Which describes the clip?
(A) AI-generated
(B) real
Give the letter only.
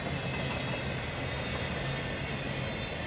B